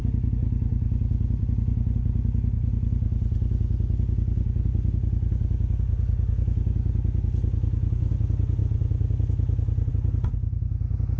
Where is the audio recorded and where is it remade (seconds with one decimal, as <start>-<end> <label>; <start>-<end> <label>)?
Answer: 0.0-11.2 recorded